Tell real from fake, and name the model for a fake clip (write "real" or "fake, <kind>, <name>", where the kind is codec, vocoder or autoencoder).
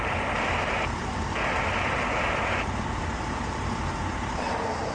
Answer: fake, vocoder, BigVGAN v2